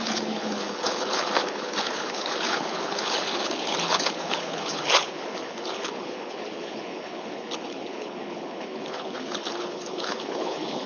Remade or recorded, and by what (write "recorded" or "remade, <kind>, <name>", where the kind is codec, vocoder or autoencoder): remade, codec, HILCodec